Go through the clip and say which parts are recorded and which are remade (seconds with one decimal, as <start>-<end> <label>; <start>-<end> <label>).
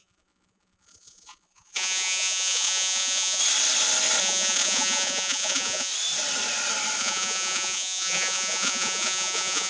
0.0-3.4 remade; 3.4-4.2 recorded; 4.2-5.9 remade; 5.9-7.0 recorded; 7.0-9.7 remade